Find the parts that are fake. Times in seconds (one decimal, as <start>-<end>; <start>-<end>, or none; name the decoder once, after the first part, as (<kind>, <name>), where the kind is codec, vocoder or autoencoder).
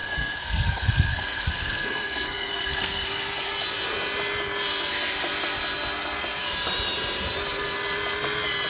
0.0-3.5 (codec, SNAC)